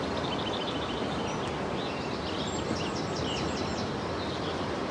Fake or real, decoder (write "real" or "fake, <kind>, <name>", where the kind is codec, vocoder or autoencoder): real